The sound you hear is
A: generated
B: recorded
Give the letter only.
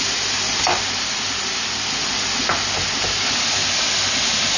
B